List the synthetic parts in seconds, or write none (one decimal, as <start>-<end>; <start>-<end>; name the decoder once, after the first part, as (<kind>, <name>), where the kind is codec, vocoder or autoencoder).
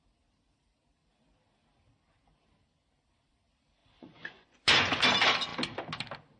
3.8-5.0 (vocoder, Vocos)